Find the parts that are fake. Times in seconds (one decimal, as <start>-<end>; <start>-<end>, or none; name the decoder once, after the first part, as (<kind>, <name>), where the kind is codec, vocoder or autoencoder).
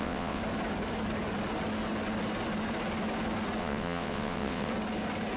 0.0-0.4 (vocoder, WaveNeXt); 3.6-4.7